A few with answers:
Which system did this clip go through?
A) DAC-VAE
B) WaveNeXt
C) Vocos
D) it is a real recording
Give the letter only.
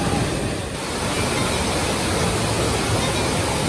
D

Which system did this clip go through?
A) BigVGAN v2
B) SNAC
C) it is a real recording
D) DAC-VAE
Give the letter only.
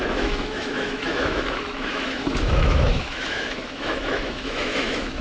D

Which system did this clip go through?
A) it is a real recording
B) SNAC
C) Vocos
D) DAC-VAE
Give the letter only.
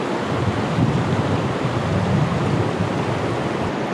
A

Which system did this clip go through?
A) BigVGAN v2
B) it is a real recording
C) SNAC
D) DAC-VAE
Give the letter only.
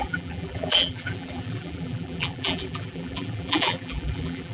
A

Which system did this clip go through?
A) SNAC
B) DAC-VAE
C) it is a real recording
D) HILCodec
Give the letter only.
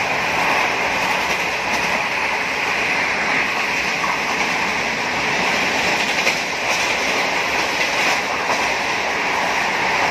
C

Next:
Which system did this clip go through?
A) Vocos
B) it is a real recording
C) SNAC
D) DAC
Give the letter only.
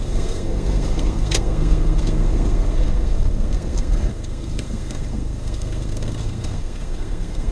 C